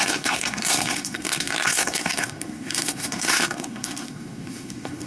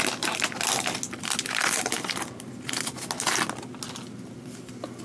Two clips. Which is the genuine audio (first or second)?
second